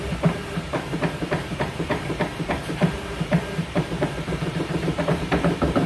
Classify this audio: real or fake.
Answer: fake